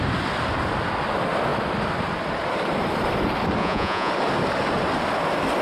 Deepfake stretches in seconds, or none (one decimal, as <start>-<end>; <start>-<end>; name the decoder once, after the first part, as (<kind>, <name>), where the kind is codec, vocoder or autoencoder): 3.6-4.1 (vocoder, Vocos)